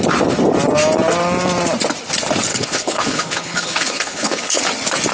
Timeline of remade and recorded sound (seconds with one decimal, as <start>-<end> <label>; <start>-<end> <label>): 0.0-2.5 recorded; 2.5-4.6 remade; 4.6-5.1 recorded